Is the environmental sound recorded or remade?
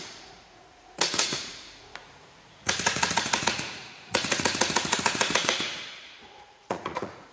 remade